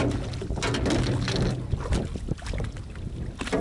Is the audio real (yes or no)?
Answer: yes